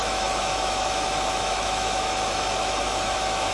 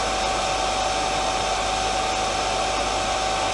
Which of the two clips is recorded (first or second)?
second